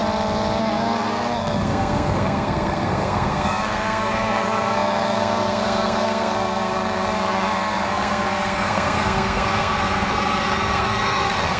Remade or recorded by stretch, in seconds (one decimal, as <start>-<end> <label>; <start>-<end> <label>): 0.0-0.6 recorded; 0.6-11.6 remade